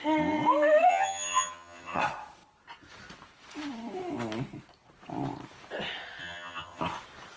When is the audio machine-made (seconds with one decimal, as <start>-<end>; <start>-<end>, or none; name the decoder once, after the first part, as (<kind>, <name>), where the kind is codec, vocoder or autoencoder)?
0.9-2.0 (vocoder, HiFi-GAN); 6.2-6.8